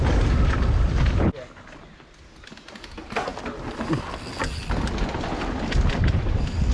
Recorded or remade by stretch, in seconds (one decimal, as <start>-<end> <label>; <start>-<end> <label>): 0.0-6.7 recorded